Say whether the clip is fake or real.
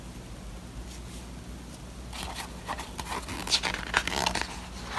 real